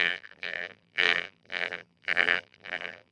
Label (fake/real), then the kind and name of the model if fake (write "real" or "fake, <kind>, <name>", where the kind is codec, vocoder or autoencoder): fake, vocoder, BigVGAN v2